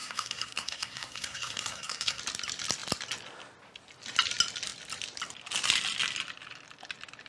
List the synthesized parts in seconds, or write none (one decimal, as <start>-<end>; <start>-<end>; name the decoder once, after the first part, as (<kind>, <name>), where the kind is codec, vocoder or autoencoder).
0.0-2.2 (codec, SNAC)

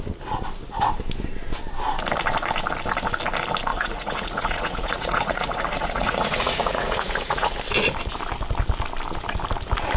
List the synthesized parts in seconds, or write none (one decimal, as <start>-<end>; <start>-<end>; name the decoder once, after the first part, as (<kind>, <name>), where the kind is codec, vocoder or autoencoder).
3.7-7.6 (vocoder, Vocos)

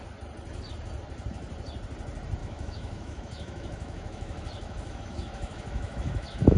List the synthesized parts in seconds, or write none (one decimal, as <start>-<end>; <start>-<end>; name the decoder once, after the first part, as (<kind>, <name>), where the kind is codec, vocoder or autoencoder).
2.4-6.6 (autoencoder, DAC-VAE)

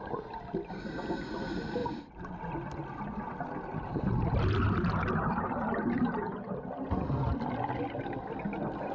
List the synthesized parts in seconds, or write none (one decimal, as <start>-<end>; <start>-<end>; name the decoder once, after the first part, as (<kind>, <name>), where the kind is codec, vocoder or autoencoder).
none

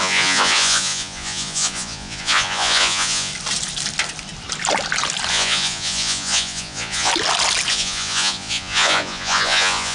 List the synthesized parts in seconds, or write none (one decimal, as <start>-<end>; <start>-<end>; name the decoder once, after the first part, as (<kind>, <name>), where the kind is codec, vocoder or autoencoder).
0.0-3.3 (vocoder, Vocos); 5.3-7.1; 7.7-9.9

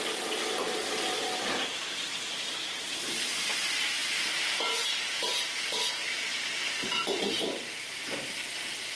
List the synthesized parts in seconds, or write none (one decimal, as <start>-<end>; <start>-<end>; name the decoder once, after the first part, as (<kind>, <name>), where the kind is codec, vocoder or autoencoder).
none